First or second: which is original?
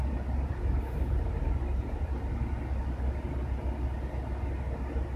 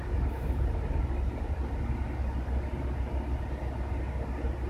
first